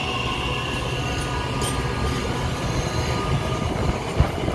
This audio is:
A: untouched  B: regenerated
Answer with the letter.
A